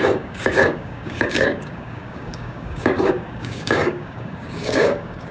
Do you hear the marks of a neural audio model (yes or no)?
yes